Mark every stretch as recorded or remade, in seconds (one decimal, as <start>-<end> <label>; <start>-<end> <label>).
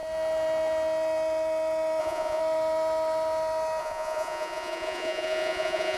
0.0-2.0 recorded; 2.0-2.4 remade; 2.4-3.8 recorded; 3.8-6.0 remade